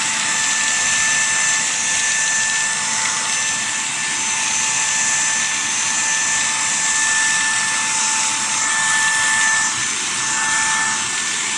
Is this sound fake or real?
real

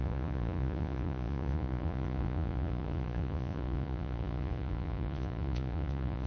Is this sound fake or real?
fake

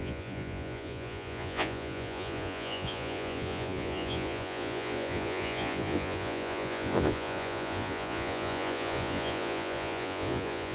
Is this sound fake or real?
fake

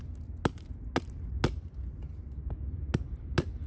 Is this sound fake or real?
real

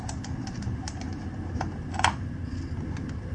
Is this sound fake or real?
real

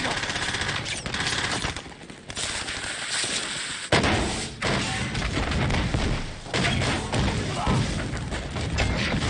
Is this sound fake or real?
real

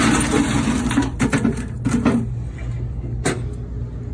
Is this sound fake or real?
real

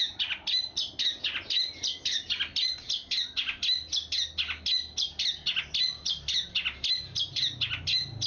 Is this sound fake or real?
real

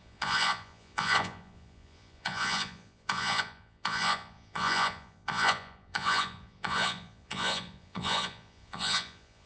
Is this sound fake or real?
fake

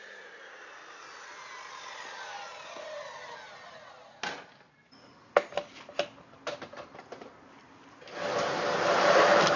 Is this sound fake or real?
real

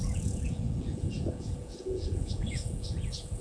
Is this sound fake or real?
fake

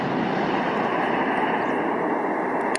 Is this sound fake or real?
real